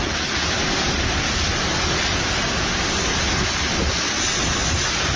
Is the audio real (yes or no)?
yes